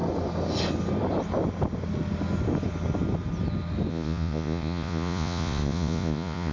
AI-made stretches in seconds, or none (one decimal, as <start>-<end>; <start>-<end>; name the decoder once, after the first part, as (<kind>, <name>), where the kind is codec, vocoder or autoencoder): 3.9-6.5 (vocoder, Vocos)